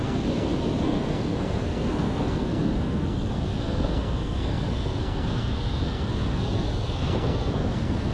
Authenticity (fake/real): fake